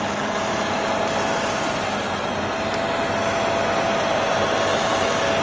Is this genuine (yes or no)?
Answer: yes